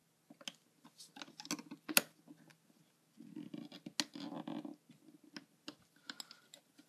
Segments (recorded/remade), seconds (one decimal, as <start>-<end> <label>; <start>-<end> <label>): 0.0-6.9 recorded